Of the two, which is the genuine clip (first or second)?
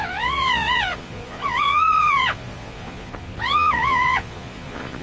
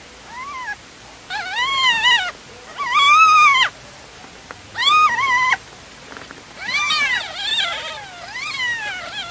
second